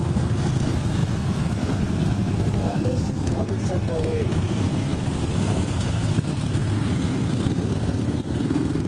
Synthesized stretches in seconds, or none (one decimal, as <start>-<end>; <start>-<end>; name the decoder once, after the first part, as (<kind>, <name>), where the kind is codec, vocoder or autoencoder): 0.0-8.9 (codec, SNAC)